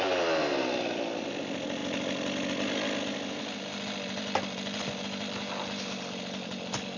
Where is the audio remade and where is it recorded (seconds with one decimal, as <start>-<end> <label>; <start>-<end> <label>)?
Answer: 0.0-7.0 recorded